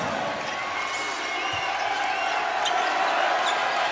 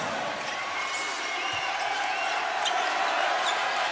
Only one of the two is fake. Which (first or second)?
second